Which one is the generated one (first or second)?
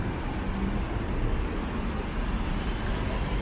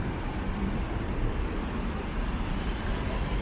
second